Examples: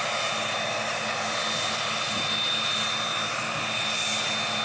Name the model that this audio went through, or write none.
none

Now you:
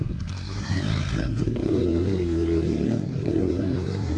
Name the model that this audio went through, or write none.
codec, SNAC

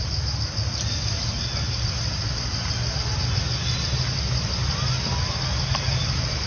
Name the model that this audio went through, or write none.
none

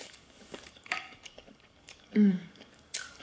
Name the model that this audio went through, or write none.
codec, DAC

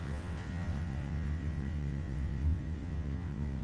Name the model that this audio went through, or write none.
vocoder, WaveNeXt